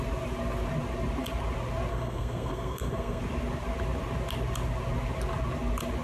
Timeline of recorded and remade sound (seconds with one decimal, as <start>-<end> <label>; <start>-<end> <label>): 0.0-1.9 recorded; 1.9-3.2 remade; 3.2-6.0 recorded